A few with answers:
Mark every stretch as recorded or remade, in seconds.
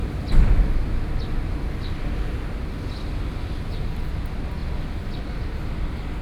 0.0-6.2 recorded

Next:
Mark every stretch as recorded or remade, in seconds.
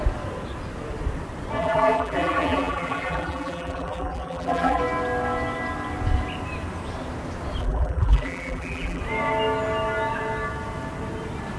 0.0-1.6 recorded; 1.6-4.8 remade; 4.8-7.6 recorded; 7.6-9.0 remade; 9.0-11.6 recorded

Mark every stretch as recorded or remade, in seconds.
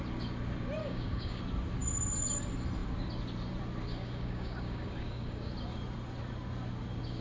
0.0-0.8 recorded; 0.8-1.4 remade; 1.4-3.9 recorded; 3.9-5.5 remade; 5.5-7.2 recorded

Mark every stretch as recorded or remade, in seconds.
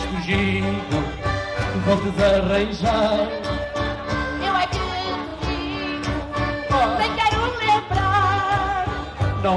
0.0-1.3 recorded; 1.3-2.0 remade; 2.0-9.6 recorded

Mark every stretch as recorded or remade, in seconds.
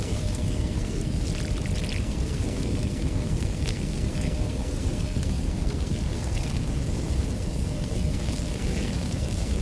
0.0-1.3 remade; 1.3-2.0 recorded; 2.0-9.6 remade